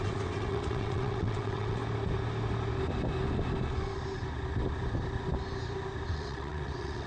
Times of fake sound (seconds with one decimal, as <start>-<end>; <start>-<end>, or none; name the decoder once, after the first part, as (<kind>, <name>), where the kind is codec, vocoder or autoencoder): 0.0-1.8 (vocoder, WaveNeXt); 6.1-7.1